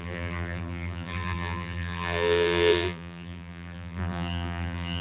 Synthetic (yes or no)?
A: yes